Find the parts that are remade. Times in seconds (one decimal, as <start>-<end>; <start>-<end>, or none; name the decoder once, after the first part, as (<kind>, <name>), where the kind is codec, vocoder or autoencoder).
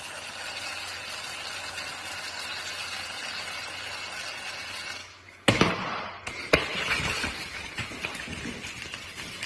5.0-5.7 (autoencoder, DAC-VAE)